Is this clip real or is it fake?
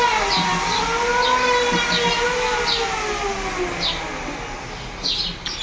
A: real